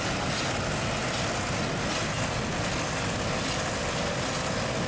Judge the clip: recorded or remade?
recorded